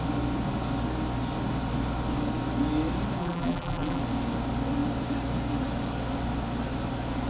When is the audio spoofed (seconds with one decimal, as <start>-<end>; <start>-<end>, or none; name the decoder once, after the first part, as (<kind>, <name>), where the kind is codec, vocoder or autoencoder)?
3.2-4.0 (vocoder, BigVGAN v2)